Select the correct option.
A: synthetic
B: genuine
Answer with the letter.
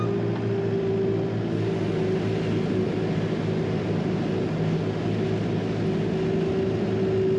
B